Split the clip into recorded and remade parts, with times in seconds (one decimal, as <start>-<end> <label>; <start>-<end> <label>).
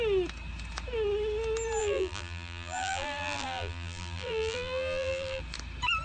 0.0-1.8 recorded; 1.8-5.4 remade; 5.4-6.0 recorded